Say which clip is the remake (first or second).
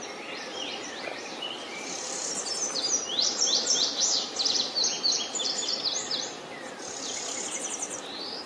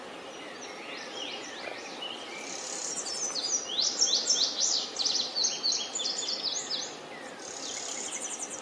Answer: first